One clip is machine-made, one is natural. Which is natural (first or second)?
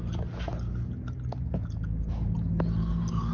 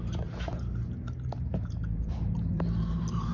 first